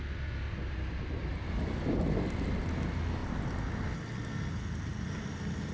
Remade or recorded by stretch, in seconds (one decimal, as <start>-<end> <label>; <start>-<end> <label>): 0.0-1.3 recorded; 1.3-1.9 remade; 1.9-5.7 recorded